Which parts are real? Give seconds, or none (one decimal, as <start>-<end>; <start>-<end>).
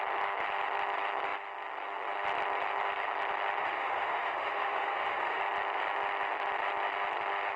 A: 0.0-3.6; 5.4-7.6